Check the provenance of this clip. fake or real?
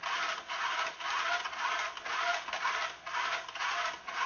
real